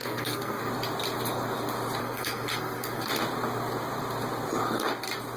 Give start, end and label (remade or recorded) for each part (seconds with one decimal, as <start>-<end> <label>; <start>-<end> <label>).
0.0-0.7 remade; 0.7-2.0 recorded; 2.0-3.1 remade; 3.1-5.4 recorded